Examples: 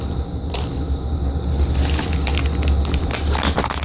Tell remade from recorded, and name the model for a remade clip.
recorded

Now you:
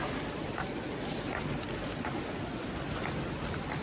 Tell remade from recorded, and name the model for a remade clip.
remade, vocoder, BigVGAN v2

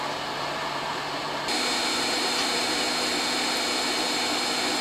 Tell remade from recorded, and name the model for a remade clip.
recorded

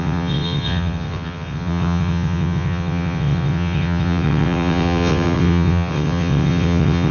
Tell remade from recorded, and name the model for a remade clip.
remade, vocoder, WaveNeXt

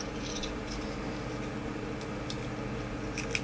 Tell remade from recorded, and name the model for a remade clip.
recorded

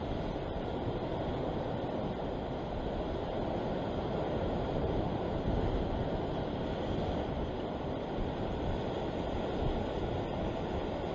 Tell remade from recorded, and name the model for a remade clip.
remade, vocoder, BigVGAN v2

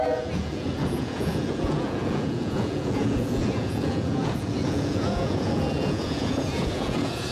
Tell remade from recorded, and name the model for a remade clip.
remade, vocoder, Vocos